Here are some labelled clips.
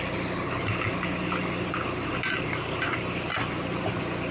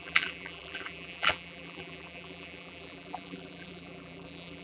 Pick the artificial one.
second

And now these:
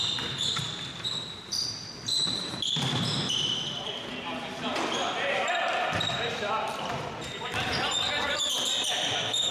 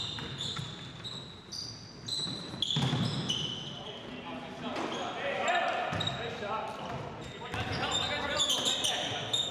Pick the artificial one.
first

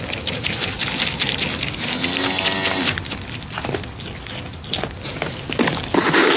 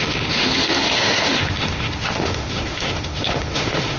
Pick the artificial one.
second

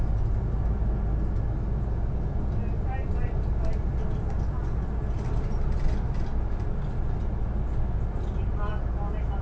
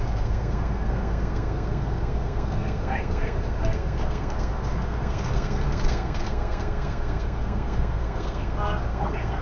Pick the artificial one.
second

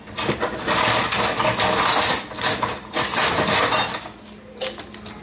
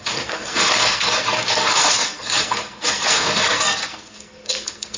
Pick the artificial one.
second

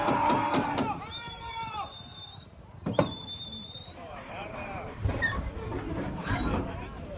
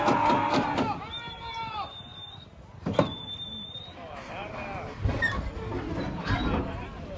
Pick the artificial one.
first